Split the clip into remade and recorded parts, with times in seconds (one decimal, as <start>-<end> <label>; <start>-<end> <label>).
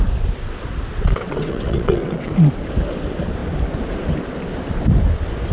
0.0-0.9 recorded; 0.9-2.3 remade; 2.3-5.5 recorded